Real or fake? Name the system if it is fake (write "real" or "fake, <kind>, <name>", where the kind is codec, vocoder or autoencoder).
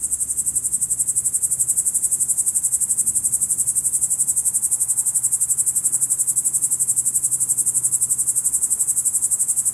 real